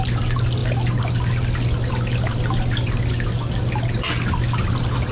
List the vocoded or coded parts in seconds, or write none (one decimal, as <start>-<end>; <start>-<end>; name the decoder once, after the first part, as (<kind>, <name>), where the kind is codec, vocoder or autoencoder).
none